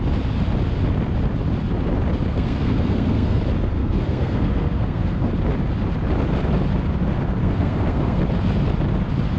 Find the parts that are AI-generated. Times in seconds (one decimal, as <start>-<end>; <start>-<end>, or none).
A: 2.3-3.4; 3.8-5.3; 7.4-8.2